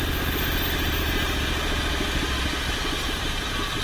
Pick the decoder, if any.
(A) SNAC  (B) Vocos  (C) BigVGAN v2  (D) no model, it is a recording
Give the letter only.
D